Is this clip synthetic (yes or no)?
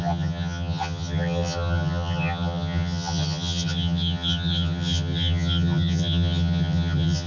yes